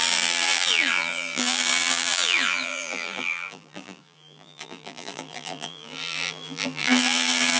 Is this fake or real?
fake